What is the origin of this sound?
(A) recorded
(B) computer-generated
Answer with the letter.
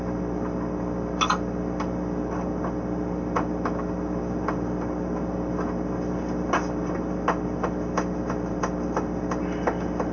A